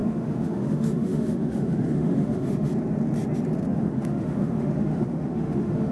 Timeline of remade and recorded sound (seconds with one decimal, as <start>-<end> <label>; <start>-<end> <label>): 0.0-2.7 remade; 2.7-3.7 recorded; 3.7-5.9 remade